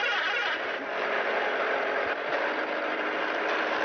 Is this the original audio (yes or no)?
no